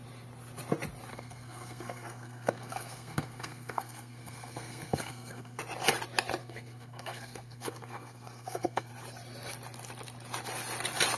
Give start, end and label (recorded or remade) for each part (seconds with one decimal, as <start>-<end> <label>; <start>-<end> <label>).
0.0-1.1 recorded; 1.1-5.6 remade; 5.6-6.4 recorded; 6.4-8.9 remade; 8.9-11.2 recorded